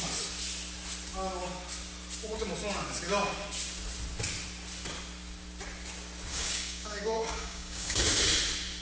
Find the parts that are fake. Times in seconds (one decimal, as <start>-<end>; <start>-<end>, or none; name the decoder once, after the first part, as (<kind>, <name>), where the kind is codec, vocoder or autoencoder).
6.3-8.2 (codec, DAC)